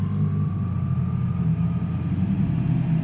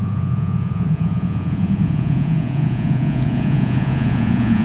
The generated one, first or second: second